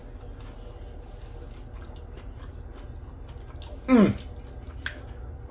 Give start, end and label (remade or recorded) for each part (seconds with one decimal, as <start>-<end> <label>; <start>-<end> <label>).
0.0-5.5 recorded